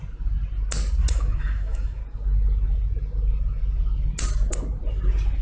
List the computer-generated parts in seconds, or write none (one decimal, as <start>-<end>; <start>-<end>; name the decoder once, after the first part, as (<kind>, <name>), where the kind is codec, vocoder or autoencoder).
1.1-2.0 (autoencoder, DAC-VAE)